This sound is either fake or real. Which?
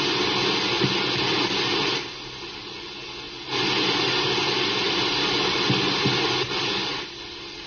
real